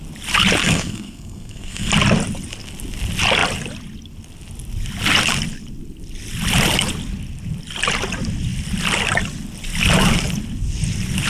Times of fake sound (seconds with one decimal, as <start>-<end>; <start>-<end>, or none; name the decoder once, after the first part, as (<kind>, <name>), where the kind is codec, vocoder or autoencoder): 0.6-1.9 (codec, SNAC)